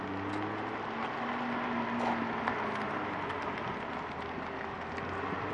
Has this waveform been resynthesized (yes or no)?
no